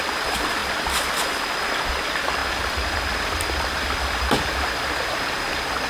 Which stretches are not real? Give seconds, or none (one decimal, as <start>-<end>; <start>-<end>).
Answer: 2.4-5.2